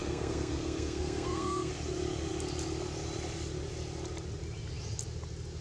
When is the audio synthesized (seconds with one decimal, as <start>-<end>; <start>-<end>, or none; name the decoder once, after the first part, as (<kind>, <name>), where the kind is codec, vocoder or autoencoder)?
0.0-1.7 (codec, SNAC)